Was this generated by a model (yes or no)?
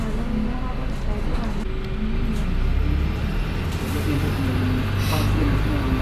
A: no